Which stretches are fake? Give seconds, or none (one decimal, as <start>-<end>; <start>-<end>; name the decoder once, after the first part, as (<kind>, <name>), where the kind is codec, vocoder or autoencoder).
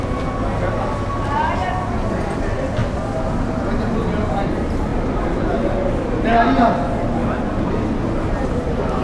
4.9-6.3 (vocoder, BigVGAN v2)